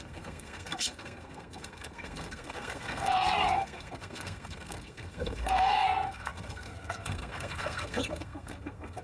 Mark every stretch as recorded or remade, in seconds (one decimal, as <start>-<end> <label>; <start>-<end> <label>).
0.0-9.0 remade